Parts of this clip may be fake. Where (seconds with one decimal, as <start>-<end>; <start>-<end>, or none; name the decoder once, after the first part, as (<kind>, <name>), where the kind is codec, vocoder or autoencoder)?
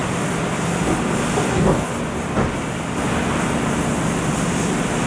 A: 1.5-1.9 (codec, DAC)